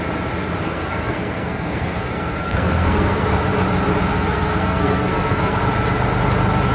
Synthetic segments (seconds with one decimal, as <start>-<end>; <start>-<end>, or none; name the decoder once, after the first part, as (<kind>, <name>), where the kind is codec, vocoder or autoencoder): 0.6-3.3 (codec, SNAC); 4.1-5.6